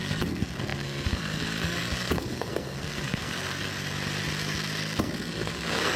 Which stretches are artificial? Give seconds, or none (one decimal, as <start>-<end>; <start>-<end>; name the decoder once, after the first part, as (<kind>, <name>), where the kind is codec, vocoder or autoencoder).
0.0-3.7 (codec, SNAC); 4.8-6.0